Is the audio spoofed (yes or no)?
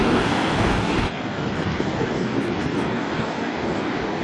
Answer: yes